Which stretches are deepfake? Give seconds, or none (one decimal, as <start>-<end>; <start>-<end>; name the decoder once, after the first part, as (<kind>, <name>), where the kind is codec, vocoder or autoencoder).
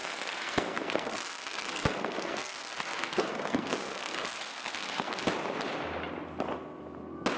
0.0-5.2 (codec, SNAC)